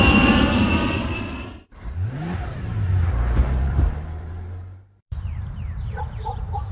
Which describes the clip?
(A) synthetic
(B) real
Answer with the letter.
A